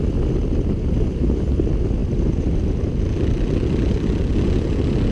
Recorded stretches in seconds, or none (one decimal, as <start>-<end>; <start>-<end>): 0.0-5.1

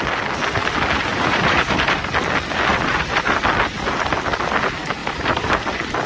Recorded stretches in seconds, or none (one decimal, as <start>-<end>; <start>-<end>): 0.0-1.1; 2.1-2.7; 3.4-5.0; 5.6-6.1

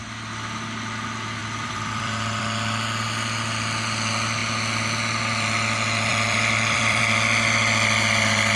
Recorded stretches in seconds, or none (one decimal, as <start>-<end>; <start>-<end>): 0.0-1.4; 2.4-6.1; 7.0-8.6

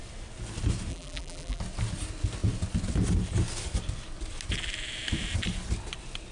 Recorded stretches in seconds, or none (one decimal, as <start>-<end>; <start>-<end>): 0.0-0.9; 1.6-6.3

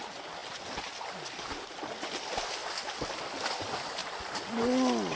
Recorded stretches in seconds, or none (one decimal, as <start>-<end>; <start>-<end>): 0.0-5.2

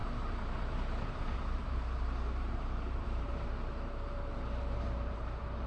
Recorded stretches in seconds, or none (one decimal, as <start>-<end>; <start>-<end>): none

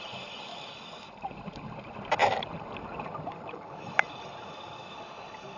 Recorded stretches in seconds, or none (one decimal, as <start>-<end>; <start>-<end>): 0.0-2.2; 4.2-5.6

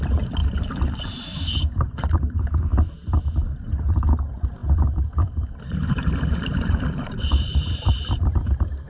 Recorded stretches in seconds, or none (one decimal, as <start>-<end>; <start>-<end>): 0.4-1.0; 2.7-3.9